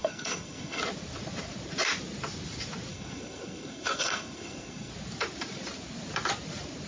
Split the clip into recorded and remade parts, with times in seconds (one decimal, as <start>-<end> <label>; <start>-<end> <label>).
0.0-0.8 remade; 0.8-2.9 recorded; 2.9-4.9 remade; 4.9-6.9 recorded